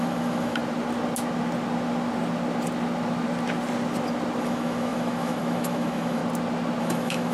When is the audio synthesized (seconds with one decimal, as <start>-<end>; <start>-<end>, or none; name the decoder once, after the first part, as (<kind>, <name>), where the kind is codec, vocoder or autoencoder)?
0.0-0.6 (autoencoder, DAC-VAE); 4.4-6.2; 6.8-7.3